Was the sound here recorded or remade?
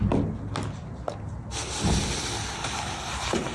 recorded